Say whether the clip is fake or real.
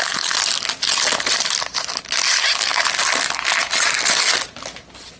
real